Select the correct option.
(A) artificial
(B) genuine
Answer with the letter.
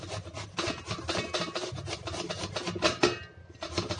B